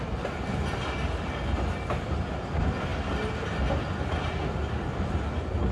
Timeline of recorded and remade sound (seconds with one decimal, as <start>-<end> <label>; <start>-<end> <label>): 0.0-5.7 recorded